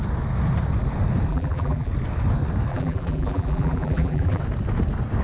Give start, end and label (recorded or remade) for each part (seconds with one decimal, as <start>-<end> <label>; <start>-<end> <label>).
0.0-1.3 recorded; 1.3-1.9 remade; 1.9-2.7 recorded; 2.7-4.4 remade; 4.4-5.2 recorded